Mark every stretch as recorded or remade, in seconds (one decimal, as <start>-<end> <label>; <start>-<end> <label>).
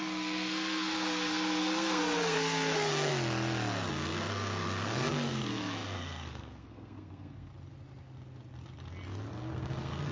0.0-3.1 remade; 3.1-3.9 recorded; 3.9-7.5 remade; 7.5-9.3 recorded; 9.3-10.1 remade